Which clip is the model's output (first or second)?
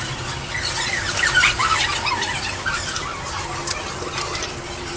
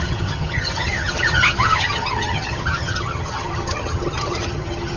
second